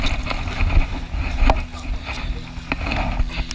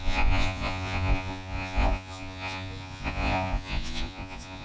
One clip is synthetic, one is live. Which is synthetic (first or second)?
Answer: second